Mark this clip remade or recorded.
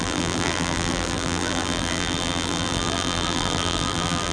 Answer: remade